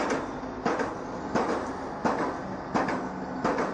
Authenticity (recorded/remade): recorded